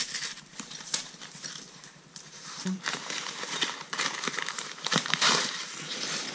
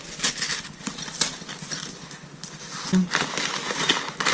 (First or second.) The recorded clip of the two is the second